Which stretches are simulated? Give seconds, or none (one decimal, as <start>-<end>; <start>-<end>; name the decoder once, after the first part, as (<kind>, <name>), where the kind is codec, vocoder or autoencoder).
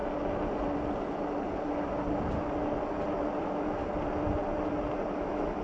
3.4-3.8 (autoencoder, DAC-VAE); 5.1-5.6